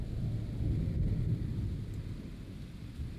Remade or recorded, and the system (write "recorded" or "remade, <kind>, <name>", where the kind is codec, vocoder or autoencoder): recorded